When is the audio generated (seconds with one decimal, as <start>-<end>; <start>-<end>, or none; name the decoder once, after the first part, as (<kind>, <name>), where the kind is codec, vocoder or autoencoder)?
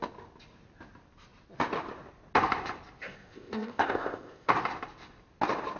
3.0-4.5 (codec, ZipCodec)